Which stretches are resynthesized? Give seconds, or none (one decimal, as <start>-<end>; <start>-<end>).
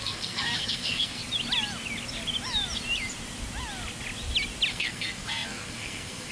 0.0-1.2; 4.7-6.3